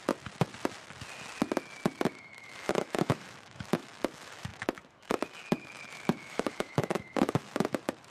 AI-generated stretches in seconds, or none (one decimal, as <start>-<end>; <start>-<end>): 2.1-8.1